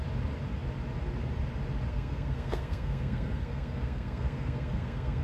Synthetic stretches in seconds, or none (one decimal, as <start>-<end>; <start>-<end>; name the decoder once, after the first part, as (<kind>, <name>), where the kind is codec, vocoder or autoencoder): 1.9-5.2 (codec, SNAC)